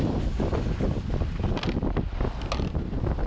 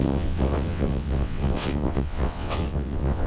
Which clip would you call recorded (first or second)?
first